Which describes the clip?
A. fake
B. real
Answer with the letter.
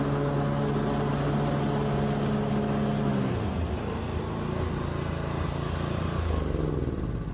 B